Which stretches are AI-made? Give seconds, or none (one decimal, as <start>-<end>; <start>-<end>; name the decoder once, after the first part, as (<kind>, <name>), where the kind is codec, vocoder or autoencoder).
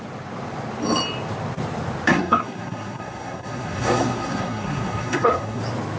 2.1-5.6 (codec, SNAC)